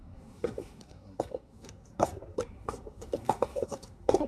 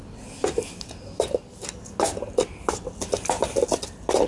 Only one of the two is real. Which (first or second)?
second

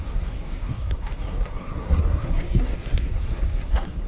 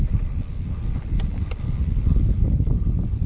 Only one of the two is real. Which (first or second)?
second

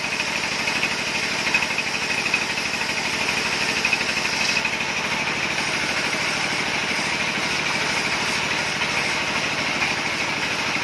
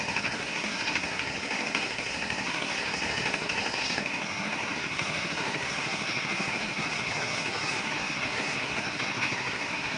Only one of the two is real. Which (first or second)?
first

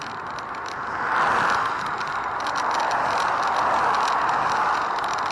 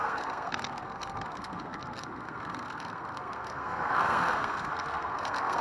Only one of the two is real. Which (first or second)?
first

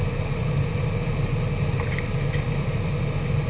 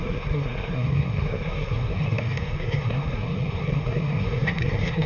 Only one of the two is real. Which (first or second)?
first